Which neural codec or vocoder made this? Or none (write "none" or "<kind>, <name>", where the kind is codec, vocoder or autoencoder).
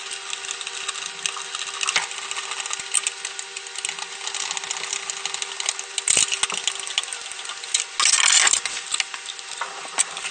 none